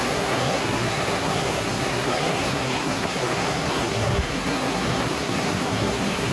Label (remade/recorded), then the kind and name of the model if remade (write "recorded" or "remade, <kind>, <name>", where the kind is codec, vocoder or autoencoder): remade, codec, SNAC